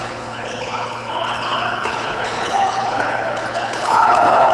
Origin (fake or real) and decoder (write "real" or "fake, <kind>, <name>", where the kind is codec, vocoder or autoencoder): fake, codec, HILCodec